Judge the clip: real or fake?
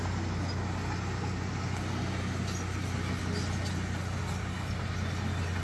real